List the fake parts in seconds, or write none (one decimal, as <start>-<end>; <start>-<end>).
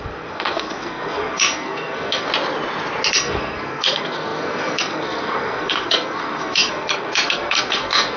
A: 0.0-2.3; 3.1-8.2